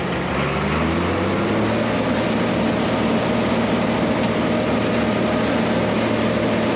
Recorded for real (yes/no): yes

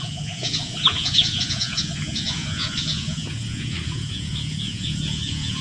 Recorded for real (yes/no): no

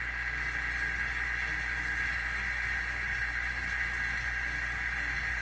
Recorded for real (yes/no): yes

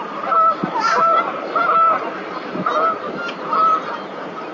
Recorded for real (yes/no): yes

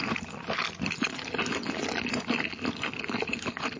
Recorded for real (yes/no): yes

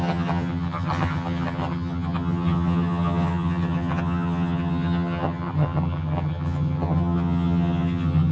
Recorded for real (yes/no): no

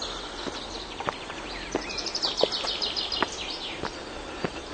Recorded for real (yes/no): yes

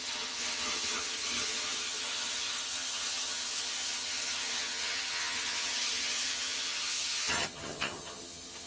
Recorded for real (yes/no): no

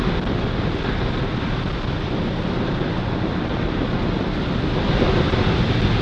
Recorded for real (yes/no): yes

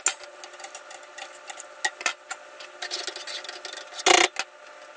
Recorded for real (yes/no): yes